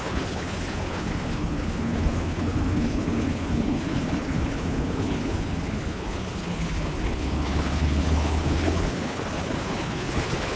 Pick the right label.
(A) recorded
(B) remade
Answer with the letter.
B